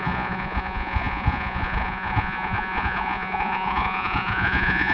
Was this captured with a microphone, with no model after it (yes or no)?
no